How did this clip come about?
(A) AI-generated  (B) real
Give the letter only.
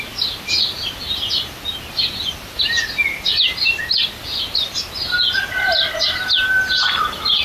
B